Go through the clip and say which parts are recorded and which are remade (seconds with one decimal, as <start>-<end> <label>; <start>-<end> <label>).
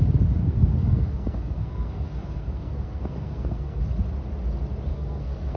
0.0-0.4 recorded; 0.4-3.8 remade; 3.8-4.9 recorded; 4.9-5.6 remade